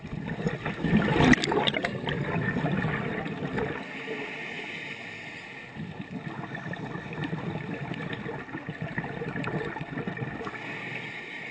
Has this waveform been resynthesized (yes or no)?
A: no